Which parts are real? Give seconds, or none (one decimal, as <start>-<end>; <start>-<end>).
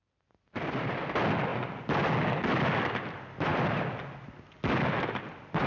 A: 0.0-5.7